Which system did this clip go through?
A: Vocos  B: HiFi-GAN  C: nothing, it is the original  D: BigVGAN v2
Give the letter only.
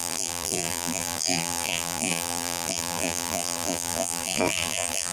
D